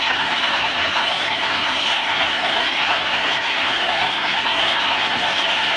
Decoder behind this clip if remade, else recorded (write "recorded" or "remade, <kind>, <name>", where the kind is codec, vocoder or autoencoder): remade, codec, SNAC